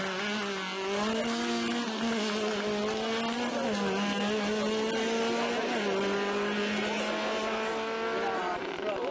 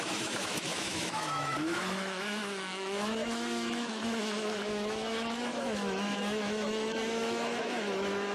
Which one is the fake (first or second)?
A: second